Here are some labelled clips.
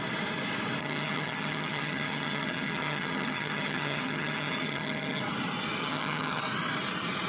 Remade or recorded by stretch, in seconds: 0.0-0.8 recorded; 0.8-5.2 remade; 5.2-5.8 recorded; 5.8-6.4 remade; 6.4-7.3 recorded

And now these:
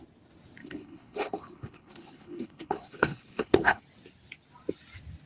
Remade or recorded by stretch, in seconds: 0.0-0.6 recorded; 0.6-3.8 remade; 3.8-5.3 recorded

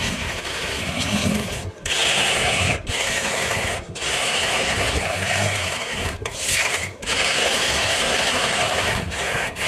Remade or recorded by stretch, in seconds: 0.0-9.7 remade

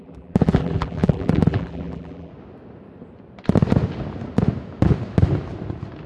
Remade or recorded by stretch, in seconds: 0.0-2.3 remade; 2.3-6.1 recorded

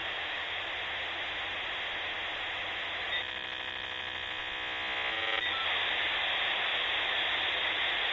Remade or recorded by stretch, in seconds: 0.0-0.6 remade; 0.6-8.1 recorded